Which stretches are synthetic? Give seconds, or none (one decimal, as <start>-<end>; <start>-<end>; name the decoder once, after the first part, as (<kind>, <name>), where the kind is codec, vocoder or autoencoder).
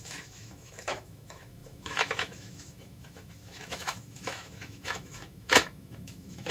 0.0-6.5 (autoencoder, DAC-VAE)